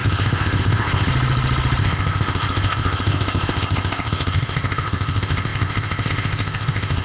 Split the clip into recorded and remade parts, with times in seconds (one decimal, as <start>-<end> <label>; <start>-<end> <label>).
0.0-1.1 remade; 1.1-1.8 recorded; 1.8-7.0 remade